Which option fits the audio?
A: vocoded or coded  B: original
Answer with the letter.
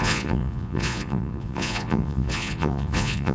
A